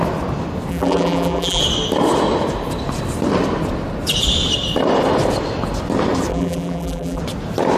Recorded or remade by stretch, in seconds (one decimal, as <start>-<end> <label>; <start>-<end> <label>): 0.0-0.7 recorded; 0.7-1.6 remade; 1.6-6.3 recorded; 6.3-7.2 remade; 7.2-7.8 recorded